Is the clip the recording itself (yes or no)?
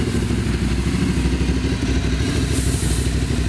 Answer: yes